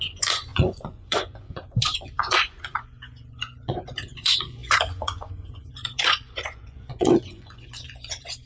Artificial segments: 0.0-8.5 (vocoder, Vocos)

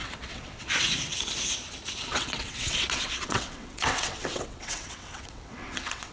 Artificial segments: 0.0-0.7 (vocoder, WaveNeXt); 2.1-6.1

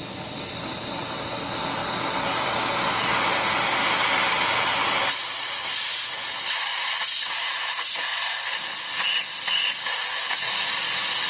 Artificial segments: none

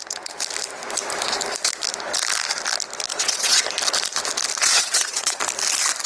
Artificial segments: 3.1-3.6 (vocoder, WaveNeXt); 4.6-5.4